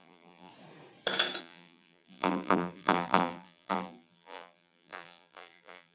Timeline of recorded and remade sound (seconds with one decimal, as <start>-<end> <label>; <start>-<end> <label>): 0.0-0.5 remade; 0.5-1.4 recorded; 1.4-5.9 remade